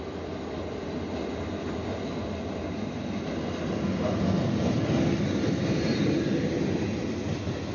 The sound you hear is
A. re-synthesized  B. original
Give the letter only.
B